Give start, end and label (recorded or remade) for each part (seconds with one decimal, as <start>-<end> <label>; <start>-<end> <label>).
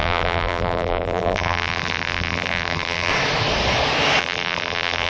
0.0-3.1 remade; 3.1-4.2 recorded; 4.2-5.1 remade